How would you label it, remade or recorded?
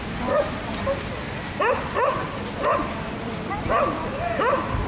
remade